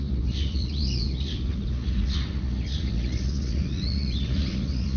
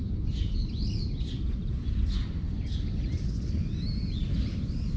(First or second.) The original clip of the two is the second